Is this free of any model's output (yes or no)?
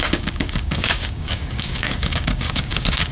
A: no